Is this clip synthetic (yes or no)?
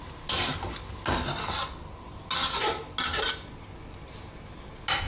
no